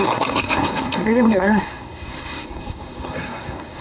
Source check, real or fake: fake